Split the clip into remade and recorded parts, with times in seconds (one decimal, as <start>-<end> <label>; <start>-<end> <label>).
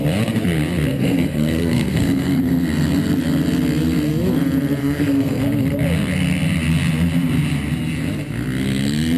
0.0-0.9 recorded; 0.9-2.4 remade; 2.4-4.8 recorded; 4.8-5.4 remade; 5.4-9.2 recorded